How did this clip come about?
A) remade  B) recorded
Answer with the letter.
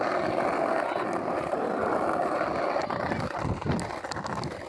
B